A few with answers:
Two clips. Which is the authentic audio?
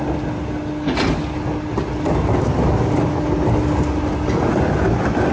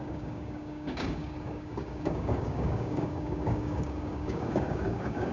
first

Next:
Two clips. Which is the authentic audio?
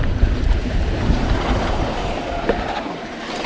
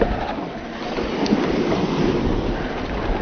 second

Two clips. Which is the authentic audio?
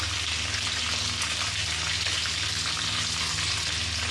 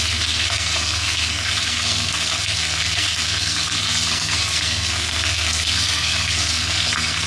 first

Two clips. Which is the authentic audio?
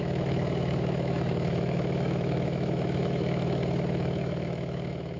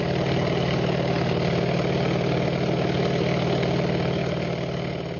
second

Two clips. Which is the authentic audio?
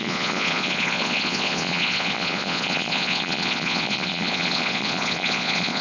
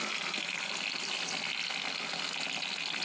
second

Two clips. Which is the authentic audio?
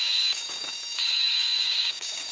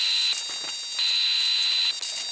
second